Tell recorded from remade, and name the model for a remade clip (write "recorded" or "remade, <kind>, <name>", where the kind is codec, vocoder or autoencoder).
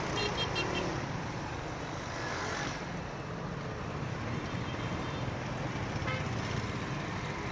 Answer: recorded